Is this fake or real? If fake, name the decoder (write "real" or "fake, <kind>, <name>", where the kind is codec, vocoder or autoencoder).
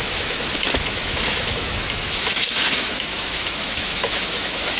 fake, autoencoder, DAC-VAE